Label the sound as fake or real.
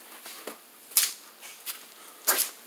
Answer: real